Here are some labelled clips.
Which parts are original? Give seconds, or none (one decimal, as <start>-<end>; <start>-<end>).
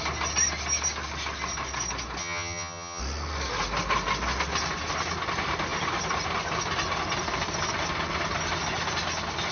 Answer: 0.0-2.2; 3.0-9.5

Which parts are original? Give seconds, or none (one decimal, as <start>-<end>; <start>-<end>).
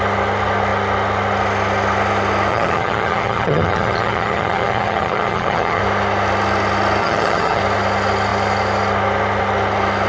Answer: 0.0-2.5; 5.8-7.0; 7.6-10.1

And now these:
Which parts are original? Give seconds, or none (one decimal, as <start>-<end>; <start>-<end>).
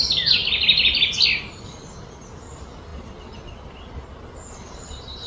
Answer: 0.0-5.3